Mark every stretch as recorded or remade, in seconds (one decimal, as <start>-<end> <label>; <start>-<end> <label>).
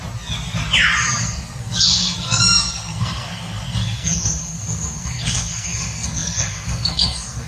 0.0-1.2 recorded; 1.2-7.5 remade